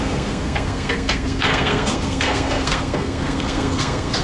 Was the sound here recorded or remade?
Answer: remade